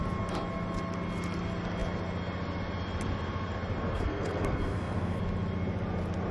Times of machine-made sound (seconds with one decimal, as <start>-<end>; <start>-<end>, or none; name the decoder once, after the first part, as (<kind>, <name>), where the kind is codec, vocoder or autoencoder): 3.9-5.2 (codec, SNAC)